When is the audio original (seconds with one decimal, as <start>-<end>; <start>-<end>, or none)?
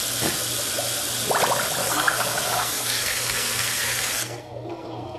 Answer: 0.0-1.8